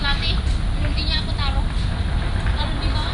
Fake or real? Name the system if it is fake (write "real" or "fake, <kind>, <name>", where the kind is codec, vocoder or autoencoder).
real